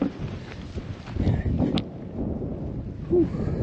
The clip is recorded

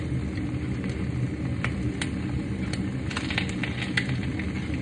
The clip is recorded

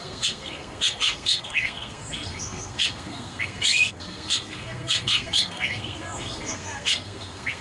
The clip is remade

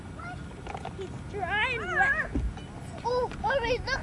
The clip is recorded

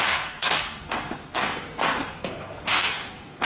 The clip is remade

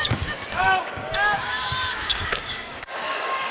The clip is remade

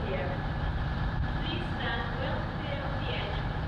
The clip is remade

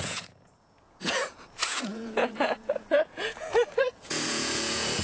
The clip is remade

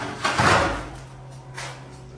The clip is recorded